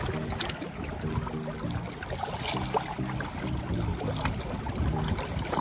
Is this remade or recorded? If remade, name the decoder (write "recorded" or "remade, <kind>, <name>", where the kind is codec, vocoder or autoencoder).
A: recorded